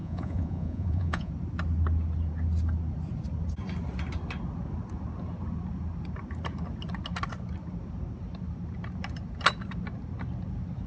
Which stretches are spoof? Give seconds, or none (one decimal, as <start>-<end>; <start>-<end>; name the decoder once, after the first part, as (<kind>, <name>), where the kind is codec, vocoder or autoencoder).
0.0-1.3 (vocoder, Vocos)